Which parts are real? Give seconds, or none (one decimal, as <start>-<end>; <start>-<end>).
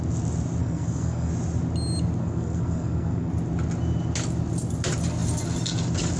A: 0.0-0.6; 1.3-2.2; 3.3-6.2